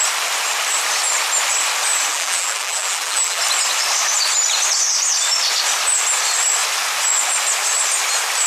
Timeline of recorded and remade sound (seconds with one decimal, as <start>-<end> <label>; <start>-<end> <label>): 0.0-2.1 recorded; 2.1-3.4 remade; 3.4-8.5 recorded